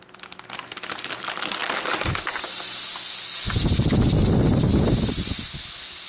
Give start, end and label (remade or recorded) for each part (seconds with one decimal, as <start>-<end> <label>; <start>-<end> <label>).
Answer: 0.0-6.1 recorded